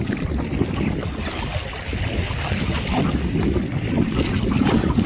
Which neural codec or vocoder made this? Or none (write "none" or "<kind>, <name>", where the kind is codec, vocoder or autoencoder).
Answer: none